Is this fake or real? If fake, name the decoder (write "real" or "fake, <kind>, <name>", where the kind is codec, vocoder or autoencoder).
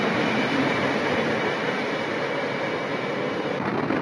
real